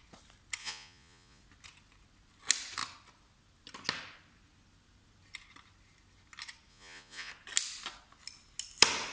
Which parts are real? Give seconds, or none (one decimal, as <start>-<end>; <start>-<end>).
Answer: 0.0-0.6; 1.4-6.7; 7.3-9.1